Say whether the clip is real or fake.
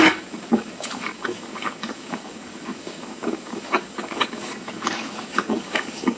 fake